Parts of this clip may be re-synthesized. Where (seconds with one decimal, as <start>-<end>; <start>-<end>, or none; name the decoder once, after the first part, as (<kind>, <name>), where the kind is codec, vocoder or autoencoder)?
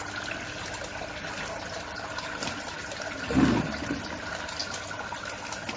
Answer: none